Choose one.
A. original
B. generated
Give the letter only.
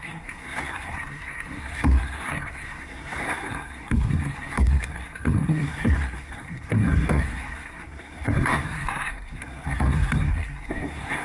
B